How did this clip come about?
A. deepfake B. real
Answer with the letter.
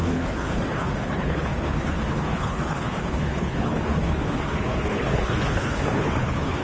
A